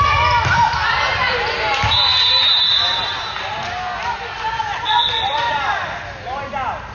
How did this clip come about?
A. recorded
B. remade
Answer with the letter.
A